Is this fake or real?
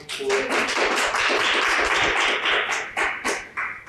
real